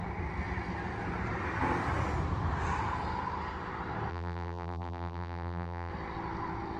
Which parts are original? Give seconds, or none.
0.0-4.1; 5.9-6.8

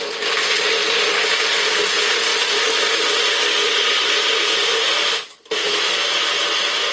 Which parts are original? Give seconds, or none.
0.0-6.9

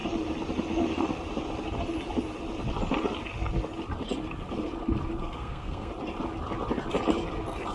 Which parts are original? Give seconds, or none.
0.0-5.2; 5.9-7.7